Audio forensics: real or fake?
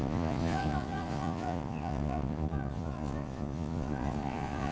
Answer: fake